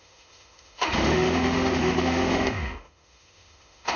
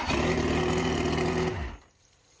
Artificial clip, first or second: first